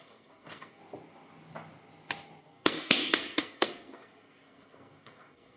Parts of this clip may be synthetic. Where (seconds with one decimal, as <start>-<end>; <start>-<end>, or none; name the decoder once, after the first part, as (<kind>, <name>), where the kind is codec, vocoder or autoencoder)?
0.0-0.8 (codec, SNAC); 2.4-5.6